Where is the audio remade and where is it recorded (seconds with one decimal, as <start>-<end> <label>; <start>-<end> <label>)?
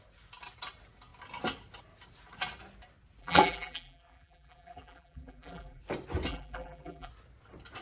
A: 0.0-3.2 recorded; 3.2-5.8 remade; 5.8-6.3 recorded; 6.3-7.1 remade; 7.1-7.8 recorded